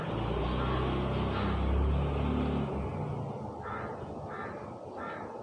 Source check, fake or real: real